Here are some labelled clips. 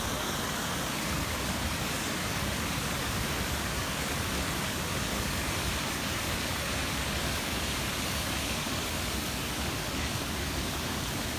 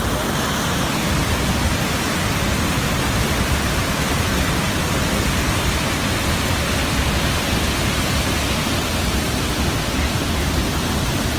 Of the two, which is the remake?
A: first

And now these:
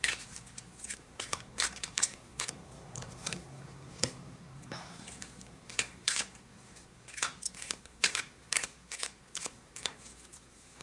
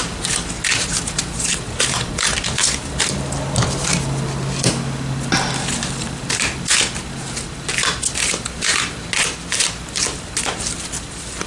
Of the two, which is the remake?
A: first